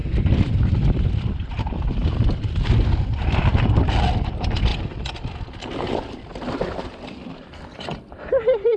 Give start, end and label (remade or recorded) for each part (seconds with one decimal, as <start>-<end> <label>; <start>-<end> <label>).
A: 0.0-4.7 remade; 4.7-6.6 recorded; 6.6-8.8 remade